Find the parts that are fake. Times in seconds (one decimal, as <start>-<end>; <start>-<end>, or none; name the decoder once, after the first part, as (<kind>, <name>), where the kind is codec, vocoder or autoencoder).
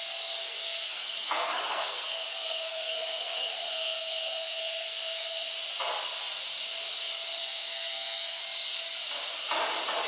0.4-5.5 (codec, SNAC); 7.4-8.4